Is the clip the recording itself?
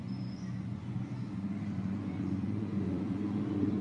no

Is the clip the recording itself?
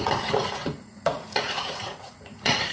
no